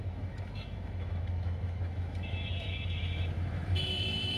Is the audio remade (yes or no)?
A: yes